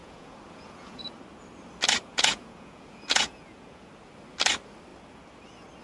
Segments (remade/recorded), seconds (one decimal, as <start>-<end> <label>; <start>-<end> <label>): 0.0-1.0 remade; 1.0-2.1 recorded; 2.1-3.9 remade; 3.9-5.8 recorded